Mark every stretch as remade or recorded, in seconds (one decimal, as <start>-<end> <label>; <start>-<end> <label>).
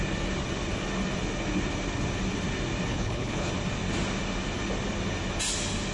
0.0-2.9 recorded; 2.9-3.5 remade; 3.5-5.9 recorded